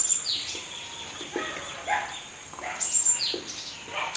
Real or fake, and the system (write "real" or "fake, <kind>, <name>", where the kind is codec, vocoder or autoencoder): real